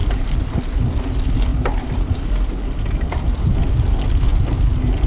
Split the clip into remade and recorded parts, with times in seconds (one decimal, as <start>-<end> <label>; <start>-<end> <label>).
0.0-0.7 remade; 0.7-1.5 recorded; 1.5-2.6 remade; 2.6-5.1 recorded